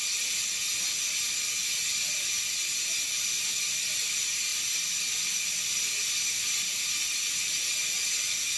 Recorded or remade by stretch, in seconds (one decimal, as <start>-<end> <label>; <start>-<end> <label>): 0.0-4.5 recorded; 4.5-5.2 remade; 5.2-8.6 recorded